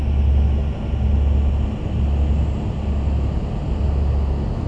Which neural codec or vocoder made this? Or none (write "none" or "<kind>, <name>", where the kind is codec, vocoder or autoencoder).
none